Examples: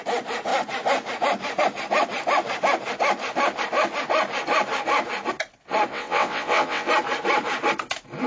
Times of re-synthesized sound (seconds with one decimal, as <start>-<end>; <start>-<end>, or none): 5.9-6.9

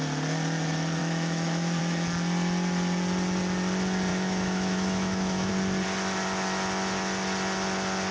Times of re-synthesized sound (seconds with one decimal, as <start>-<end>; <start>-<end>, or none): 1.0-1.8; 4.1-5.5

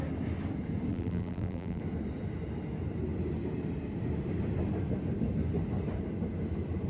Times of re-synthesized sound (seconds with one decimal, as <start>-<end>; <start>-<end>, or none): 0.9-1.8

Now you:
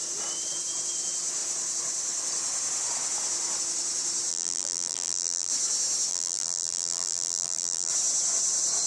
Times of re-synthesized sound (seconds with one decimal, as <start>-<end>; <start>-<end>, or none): 4.3-5.5; 6.1-7.9

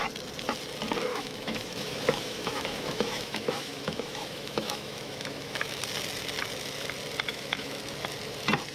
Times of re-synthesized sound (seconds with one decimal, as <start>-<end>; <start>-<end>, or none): 1.1-5.8; 7.3-7.8